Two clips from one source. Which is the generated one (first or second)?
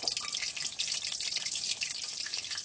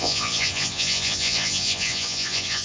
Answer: second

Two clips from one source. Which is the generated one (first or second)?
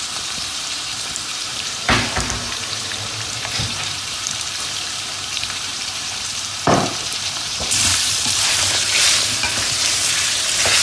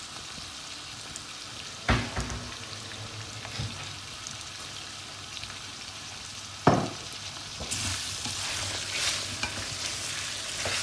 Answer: first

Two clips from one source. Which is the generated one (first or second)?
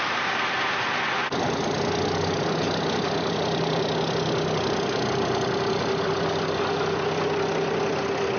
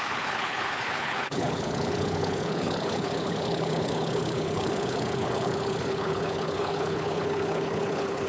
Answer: second